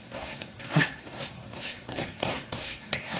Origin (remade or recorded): remade